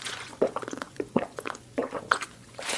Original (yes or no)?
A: no